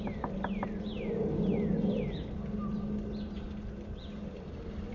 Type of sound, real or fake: real